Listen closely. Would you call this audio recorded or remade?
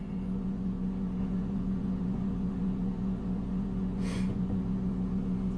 remade